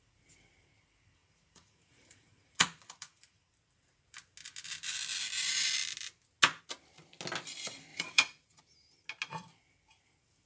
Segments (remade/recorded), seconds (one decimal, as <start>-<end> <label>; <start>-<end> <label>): 0.0-1.2 recorded; 1.2-3.5 remade; 3.5-7.9 recorded; 7.9-8.6 remade; 8.6-10.5 recorded

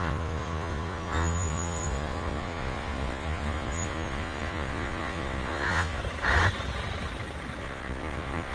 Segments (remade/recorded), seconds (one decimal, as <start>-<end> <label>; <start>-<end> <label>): 0.0-6.0 remade; 6.0-7.6 recorded; 7.6-8.5 remade

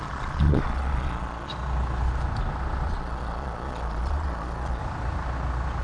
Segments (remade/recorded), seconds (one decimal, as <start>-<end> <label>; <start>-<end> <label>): 0.0-1.5 remade; 1.5-2.9 recorded; 2.9-4.8 remade; 4.8-5.8 recorded

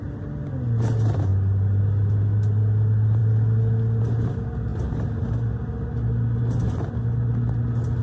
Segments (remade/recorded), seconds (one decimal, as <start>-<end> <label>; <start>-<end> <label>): 0.0-8.0 recorded